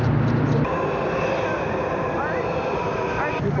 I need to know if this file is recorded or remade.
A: recorded